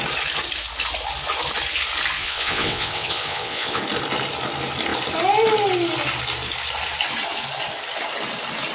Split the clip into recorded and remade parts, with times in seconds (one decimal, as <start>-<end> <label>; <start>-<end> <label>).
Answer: 0.0-2.2 recorded; 2.2-3.8 remade; 3.8-8.7 recorded